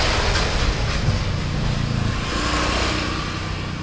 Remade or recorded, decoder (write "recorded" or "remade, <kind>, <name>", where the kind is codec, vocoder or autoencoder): recorded